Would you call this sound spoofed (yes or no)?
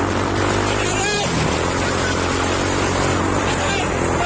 no